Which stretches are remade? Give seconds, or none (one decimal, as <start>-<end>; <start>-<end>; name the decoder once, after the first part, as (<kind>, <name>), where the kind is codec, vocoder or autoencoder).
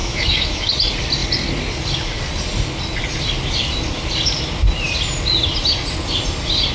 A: 0.0-0.7 (autoencoder, DAC-VAE)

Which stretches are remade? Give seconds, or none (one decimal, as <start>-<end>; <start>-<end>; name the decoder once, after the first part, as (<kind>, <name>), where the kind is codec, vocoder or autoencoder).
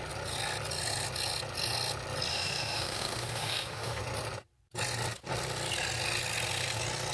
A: 2.3-4.0 (autoencoder, DAC-VAE)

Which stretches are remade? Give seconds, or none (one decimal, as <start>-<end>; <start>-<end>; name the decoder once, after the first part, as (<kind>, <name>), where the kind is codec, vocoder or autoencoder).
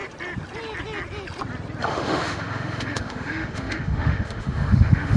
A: 1.9-5.2 (autoencoder, DAC-VAE)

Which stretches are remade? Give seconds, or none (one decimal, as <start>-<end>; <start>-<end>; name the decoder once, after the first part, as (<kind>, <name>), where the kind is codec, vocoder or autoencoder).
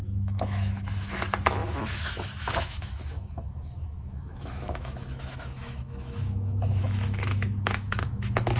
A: 0.0-8.6 (autoencoder, DAC-VAE)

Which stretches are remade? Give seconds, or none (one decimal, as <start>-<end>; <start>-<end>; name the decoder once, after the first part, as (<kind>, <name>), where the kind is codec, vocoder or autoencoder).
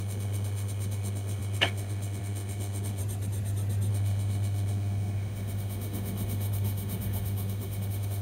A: 0.0-3.0 (autoencoder, DAC-VAE); 3.9-8.2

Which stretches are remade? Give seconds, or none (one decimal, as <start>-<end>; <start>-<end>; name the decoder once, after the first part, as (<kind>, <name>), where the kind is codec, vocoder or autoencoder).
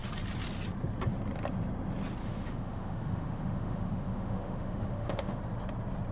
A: 2.2-5.4 (autoencoder, DAC-VAE)